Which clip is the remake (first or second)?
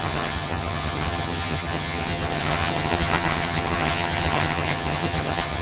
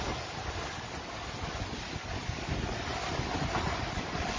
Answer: first